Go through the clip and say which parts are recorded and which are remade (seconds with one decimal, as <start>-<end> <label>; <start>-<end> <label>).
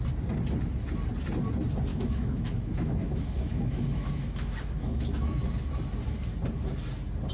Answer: 0.0-1.9 recorded; 1.9-5.5 remade; 5.5-7.3 recorded